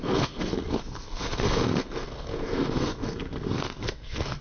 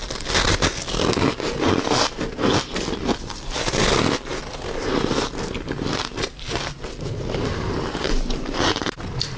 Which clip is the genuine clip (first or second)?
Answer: second